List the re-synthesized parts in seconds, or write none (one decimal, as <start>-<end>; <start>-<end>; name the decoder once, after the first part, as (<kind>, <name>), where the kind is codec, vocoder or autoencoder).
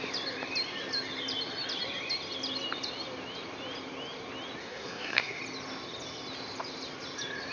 4.6-5.4 (codec, SNAC)